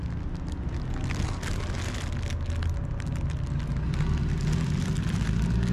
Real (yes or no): yes